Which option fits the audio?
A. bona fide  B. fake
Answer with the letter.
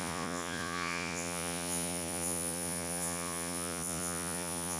B